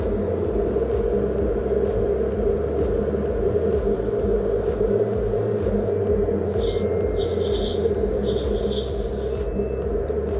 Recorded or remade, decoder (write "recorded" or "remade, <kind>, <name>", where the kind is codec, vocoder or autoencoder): recorded